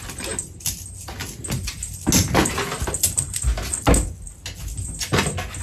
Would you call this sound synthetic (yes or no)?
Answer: no